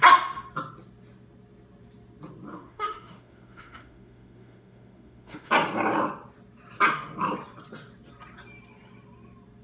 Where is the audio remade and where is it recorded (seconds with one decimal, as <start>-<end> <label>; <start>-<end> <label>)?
0.0-2.5 recorded; 2.5-5.5 remade; 5.5-9.6 recorded